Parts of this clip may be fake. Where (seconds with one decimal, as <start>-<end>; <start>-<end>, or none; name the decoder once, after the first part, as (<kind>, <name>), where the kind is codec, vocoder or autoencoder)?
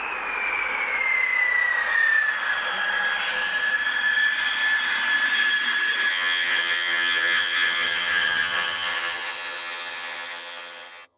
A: 6.1-11.2 (vocoder, HiFi-GAN)